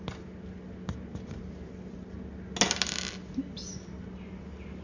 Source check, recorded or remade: recorded